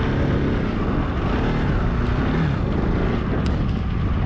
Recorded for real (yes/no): yes